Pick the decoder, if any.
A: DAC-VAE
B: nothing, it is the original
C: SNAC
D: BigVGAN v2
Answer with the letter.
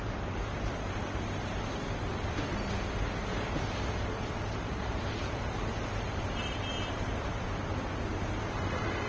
D